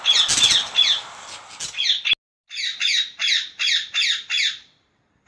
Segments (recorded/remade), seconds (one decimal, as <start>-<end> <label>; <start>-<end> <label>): 0.0-5.3 recorded